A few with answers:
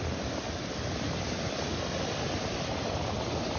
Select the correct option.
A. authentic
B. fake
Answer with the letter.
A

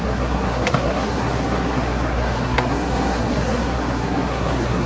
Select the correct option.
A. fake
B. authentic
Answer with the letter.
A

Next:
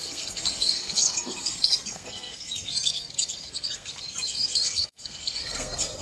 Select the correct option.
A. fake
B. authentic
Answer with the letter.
A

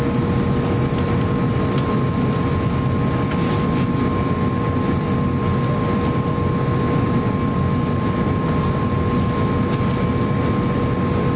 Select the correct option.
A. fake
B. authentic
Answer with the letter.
B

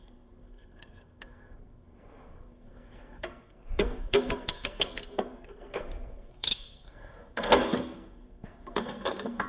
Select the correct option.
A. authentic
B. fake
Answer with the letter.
B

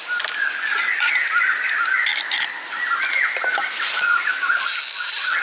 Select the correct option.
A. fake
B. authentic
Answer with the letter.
B